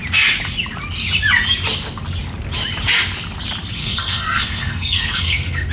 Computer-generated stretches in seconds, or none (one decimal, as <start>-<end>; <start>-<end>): 3.8-5.7